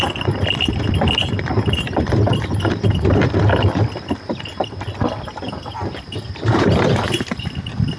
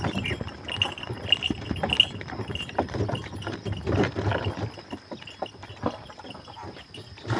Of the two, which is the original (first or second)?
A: second